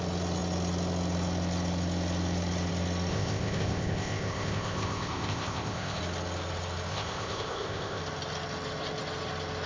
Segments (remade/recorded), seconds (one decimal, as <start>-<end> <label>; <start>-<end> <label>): 0.0-3.1 recorded; 3.1-6.0 remade; 6.0-6.9 recorded; 6.9-8.0 remade; 8.0-9.7 recorded